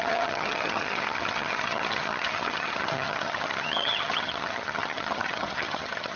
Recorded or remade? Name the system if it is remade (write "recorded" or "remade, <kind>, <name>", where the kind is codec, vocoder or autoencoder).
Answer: remade, vocoder, HiFi-GAN